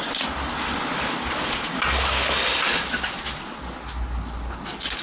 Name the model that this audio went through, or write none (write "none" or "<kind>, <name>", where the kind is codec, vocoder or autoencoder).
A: none